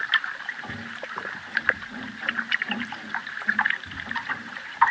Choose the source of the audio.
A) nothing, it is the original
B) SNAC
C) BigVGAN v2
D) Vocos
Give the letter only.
C